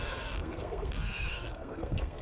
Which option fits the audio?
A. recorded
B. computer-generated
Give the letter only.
B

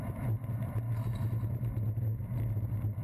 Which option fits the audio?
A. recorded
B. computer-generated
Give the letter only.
B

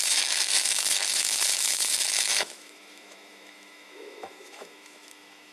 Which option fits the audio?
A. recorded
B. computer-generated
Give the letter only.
B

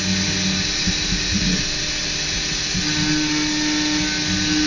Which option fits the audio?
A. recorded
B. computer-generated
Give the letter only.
A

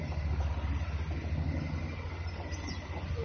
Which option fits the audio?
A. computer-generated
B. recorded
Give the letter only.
B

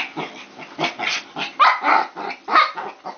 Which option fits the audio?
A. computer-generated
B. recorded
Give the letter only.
B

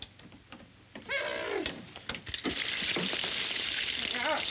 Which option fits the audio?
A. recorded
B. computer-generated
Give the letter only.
A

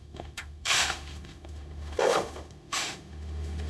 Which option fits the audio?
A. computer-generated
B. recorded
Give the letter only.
A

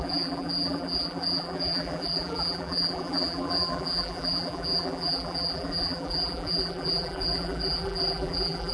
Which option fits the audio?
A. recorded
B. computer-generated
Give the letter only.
B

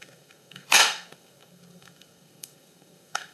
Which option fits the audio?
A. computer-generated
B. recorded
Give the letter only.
A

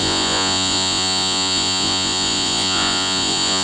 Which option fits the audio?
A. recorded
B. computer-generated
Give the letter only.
B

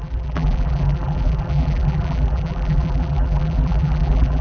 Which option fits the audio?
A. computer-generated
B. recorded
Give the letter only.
A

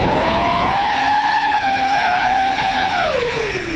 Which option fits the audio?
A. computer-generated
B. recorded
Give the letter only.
A